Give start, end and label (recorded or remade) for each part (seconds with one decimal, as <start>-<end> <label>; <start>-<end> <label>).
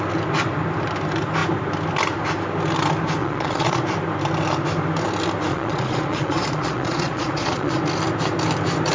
0.0-3.2 recorded; 3.2-3.8 remade; 3.8-5.5 recorded; 5.5-7.8 remade; 7.8-8.9 recorded